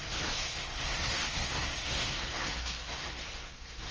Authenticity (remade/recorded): remade